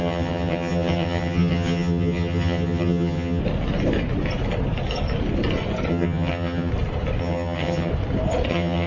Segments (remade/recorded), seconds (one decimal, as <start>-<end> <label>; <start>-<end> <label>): 0.0-3.4 remade; 3.4-5.9 recorded; 5.9-6.7 remade; 6.7-7.2 recorded; 7.2-7.9 remade; 7.9-8.5 recorded; 8.5-8.9 remade